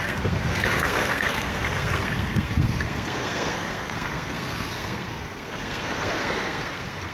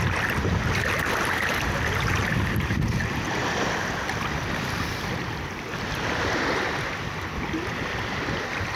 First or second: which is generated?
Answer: first